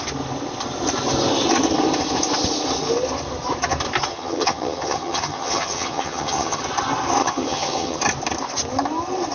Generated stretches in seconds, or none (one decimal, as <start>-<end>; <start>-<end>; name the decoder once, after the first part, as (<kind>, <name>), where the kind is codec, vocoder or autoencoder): 4.1-6.6 (vocoder, HiFi-GAN); 7.2-8.0